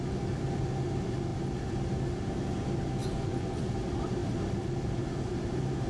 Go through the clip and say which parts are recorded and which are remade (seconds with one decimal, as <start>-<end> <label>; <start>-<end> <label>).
0.0-3.0 recorded; 3.0-3.7 remade; 3.7-5.9 recorded